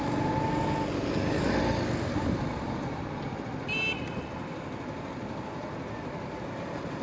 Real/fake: real